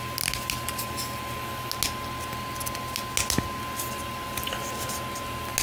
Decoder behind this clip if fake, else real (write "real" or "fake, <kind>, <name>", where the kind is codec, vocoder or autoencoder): real